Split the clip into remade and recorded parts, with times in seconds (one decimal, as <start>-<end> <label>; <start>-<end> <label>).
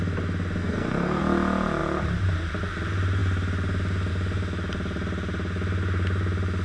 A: 0.0-0.6 recorded; 0.6-1.2 remade; 1.2-6.6 recorded